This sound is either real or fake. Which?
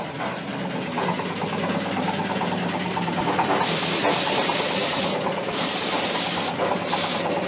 real